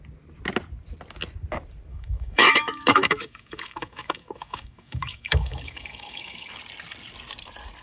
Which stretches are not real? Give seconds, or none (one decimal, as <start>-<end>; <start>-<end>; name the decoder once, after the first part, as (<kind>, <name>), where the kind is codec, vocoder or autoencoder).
1.9-6.6 (autoencoder, DAC-VAE)